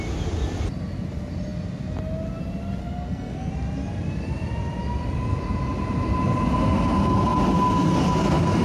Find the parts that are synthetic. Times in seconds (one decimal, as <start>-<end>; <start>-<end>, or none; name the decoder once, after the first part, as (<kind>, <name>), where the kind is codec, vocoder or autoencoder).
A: 2.8-3.5 (codec, SNAC)